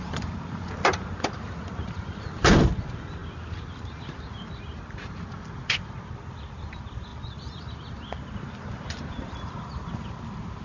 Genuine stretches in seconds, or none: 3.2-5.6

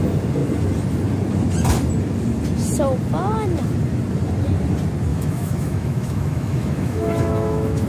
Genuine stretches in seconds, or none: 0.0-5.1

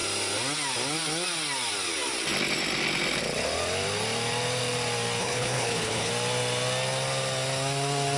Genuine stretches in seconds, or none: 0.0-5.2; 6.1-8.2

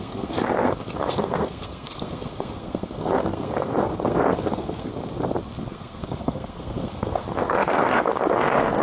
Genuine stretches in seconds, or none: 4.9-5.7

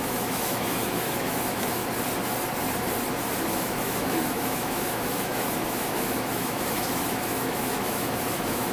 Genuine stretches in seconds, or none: 1.8-3.5